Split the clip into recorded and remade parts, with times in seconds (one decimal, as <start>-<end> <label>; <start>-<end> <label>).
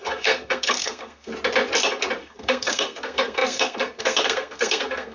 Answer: 0.0-1.3 remade; 1.3-2.2 recorded; 2.2-5.1 remade